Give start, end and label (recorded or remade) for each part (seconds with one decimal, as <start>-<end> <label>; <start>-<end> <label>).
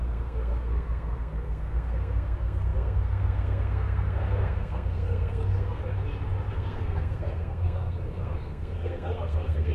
0.0-5.8 remade; 5.8-6.5 recorded; 6.5-9.7 remade